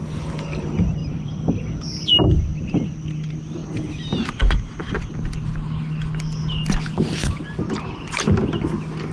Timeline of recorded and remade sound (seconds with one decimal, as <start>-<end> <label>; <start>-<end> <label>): 0.0-1.0 recorded; 1.0-1.5 remade; 1.5-3.6 recorded; 3.6-5.1 remade; 5.1-9.1 recorded